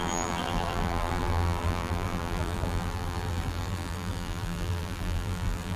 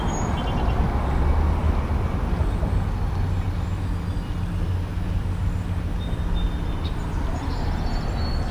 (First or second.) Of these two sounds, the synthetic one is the first